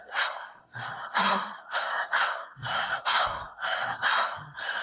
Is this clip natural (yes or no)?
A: no